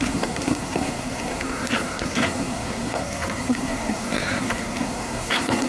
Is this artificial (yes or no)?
yes